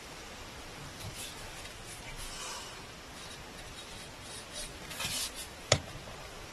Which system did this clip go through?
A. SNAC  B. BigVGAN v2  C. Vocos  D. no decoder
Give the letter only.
D